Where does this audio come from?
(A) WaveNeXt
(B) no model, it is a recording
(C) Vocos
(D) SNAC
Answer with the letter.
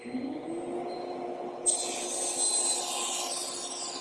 B